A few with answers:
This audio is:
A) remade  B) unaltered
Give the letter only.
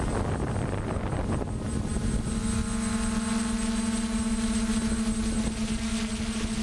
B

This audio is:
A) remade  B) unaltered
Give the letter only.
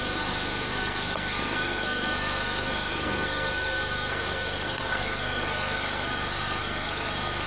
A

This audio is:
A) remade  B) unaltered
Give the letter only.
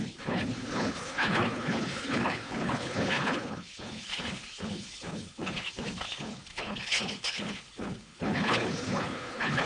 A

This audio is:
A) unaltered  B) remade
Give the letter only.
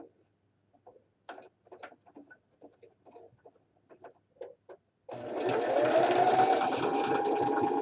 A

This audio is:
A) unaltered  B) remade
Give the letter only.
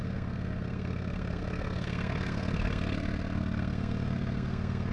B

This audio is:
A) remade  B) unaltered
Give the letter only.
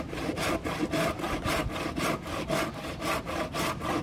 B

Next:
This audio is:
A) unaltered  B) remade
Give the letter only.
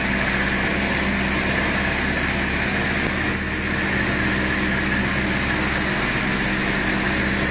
A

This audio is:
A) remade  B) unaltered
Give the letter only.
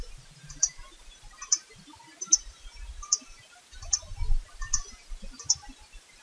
B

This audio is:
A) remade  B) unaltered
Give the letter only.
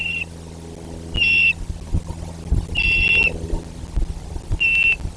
B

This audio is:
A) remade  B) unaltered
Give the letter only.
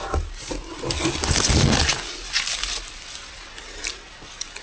B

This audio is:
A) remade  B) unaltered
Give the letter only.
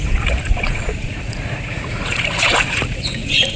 A